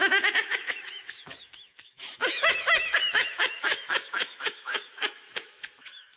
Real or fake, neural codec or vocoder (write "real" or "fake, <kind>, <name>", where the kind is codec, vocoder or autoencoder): fake, autoencoder, DAC-VAE